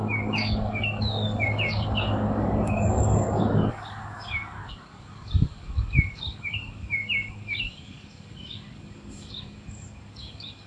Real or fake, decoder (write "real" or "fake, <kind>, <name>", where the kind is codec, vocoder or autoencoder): fake, codec, DAC